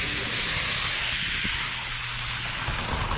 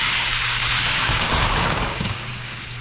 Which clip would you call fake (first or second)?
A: second